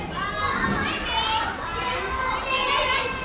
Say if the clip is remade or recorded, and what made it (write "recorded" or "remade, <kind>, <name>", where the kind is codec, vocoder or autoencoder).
recorded